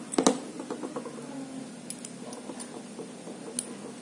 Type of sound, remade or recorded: recorded